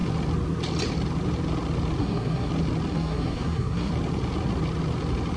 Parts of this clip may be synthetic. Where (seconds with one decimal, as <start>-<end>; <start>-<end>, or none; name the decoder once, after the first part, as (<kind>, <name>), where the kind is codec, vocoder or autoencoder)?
2.0-2.5 (codec, SNAC); 2.9-3.9